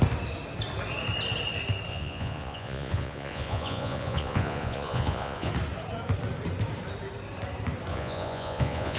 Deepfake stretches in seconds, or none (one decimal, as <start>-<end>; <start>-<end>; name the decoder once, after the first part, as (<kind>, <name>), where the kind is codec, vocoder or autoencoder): 1.9-5.5 (vocoder, Vocos); 7.9-9.0